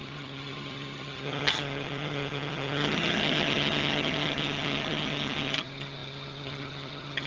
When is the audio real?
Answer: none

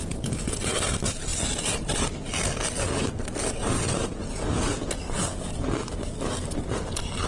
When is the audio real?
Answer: 0.8-4.0; 5.0-7.3

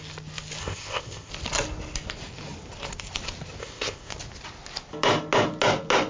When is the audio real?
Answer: 0.0-0.6; 1.3-3.6; 4.1-6.1

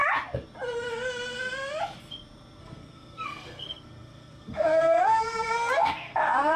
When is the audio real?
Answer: 0.0-2.6

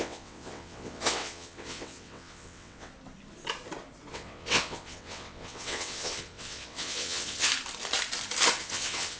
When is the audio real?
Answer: 2.9-4.1; 7.5-8.6

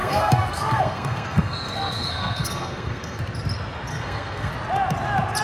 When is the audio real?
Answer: 3.2-3.9; 4.5-5.4

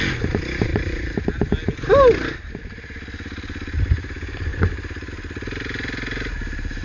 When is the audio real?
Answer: 0.0-0.7; 1.2-4.5; 5.1-6.8

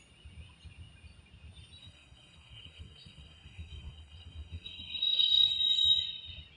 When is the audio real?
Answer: 0.0-1.8; 5.5-6.6